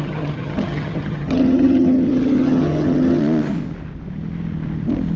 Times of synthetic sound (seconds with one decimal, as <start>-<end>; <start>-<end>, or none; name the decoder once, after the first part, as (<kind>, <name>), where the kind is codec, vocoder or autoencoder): 0.0-3.2 (vocoder, HiFi-GAN)